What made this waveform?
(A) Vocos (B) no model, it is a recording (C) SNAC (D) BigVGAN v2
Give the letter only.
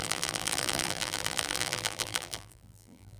D